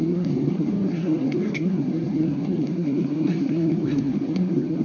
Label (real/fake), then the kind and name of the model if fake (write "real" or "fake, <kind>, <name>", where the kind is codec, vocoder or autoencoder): fake, codec, SNAC